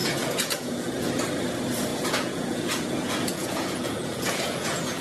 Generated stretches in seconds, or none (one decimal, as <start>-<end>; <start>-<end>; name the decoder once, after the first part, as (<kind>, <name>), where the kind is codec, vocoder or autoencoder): 0.0-1.1 (vocoder, Vocos); 1.9-5.0